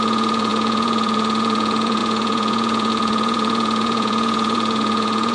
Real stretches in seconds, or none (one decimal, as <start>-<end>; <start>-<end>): none